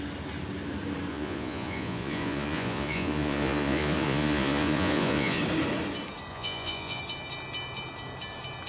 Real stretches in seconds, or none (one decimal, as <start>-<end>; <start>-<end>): 0.0-1.1; 5.4-6.3; 7.0-8.7